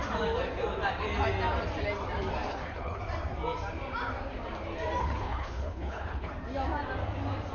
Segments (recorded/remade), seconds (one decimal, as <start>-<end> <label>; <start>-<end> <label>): 0.0-2.5 recorded; 2.5-3.0 remade; 3.0-5.0 recorded; 5.0-6.3 remade; 6.3-7.5 recorded